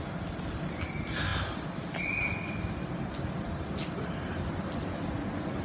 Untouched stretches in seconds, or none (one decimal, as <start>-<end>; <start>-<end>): 0.0-5.6